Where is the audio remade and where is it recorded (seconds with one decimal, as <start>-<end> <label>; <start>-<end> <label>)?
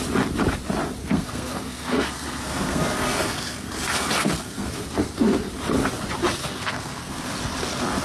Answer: 0.0-1.0 recorded; 1.0-5.5 remade; 5.5-6.4 recorded; 6.4-7.3 remade; 7.3-8.0 recorded